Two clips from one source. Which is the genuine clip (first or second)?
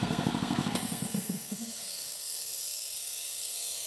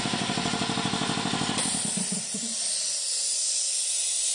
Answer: second